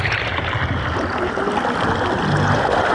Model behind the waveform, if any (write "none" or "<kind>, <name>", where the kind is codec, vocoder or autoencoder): none